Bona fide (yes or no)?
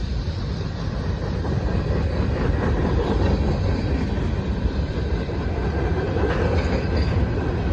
no